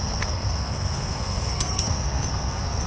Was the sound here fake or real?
fake